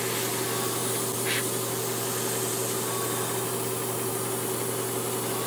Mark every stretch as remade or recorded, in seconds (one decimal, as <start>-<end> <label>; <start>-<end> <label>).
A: 0.0-5.5 recorded